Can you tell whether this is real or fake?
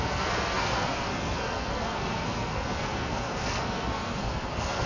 fake